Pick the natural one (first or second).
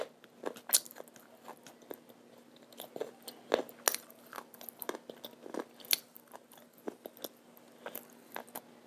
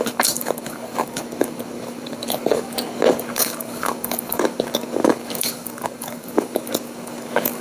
first